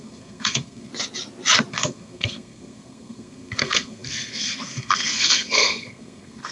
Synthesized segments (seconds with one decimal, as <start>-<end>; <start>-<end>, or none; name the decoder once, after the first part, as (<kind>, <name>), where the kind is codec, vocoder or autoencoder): 0.0-0.9 (codec, SNAC); 1.7-6.5

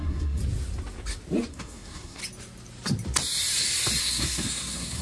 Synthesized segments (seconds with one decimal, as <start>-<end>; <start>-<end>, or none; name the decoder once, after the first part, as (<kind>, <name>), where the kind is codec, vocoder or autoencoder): 0.0-0.4 (codec, SNAC); 1.5-2.2; 4.0-5.0

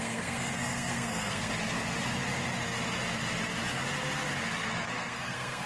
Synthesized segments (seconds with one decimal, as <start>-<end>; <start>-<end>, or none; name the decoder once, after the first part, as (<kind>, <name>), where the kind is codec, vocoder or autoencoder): 0.0-1.5 (codec, SNAC); 4.9-5.7

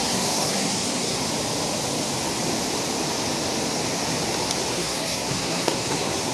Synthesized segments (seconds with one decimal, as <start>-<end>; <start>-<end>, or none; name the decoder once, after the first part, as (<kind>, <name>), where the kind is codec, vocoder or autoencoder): 0.0-1.2 (codec, SNAC); 4.7-6.3

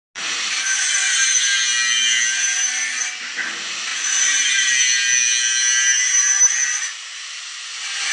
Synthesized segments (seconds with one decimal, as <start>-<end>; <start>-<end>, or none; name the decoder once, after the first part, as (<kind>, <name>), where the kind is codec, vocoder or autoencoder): none